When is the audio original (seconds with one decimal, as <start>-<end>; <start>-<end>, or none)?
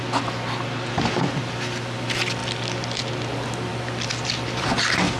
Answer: 0.0-5.2